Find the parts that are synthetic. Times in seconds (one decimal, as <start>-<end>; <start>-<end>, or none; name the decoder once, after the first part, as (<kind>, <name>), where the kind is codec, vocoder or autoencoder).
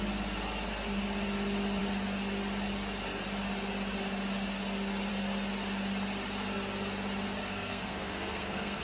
7.5-8.8 (codec, SNAC)